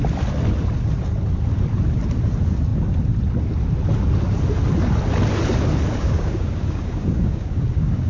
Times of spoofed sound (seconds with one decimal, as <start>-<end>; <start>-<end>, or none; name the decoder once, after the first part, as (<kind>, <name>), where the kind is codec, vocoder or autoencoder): 6.0-8.1 (codec, DAC)